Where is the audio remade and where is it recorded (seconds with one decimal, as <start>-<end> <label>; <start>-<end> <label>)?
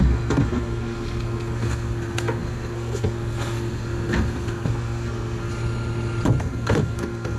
0.0-5.5 remade; 5.5-6.4 recorded; 6.4-7.4 remade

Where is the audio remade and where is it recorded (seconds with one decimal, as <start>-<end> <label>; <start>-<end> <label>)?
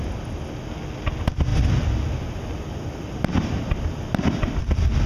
0.0-5.1 recorded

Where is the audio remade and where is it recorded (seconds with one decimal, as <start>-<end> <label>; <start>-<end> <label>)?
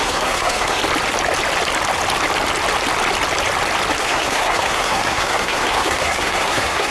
0.0-0.8 remade; 0.8-4.0 recorded; 4.0-6.9 remade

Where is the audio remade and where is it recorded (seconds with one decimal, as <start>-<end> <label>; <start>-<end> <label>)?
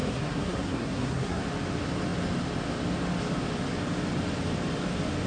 0.0-1.4 remade; 1.4-5.3 recorded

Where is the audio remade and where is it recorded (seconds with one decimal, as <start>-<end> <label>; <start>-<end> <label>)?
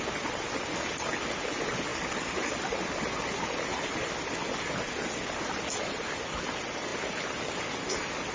0.0-8.3 recorded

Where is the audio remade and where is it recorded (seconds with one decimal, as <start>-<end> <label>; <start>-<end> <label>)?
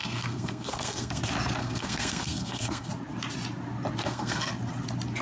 0.0-1.2 remade; 1.2-1.6 recorded; 1.6-2.9 remade; 2.9-4.0 recorded; 4.0-4.5 remade; 4.5-5.2 recorded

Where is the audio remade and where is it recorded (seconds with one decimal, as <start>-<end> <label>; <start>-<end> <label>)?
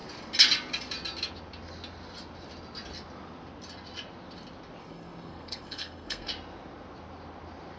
0.0-4.8 recorded; 4.8-6.3 remade; 6.3-7.8 recorded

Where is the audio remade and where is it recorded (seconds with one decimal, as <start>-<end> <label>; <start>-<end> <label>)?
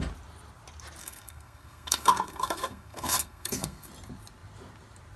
0.0-1.0 recorded; 1.0-3.9 remade; 3.9-5.2 recorded